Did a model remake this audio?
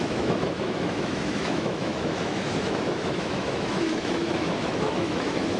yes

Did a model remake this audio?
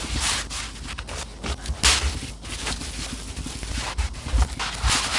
no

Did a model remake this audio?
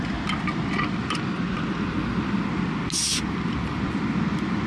no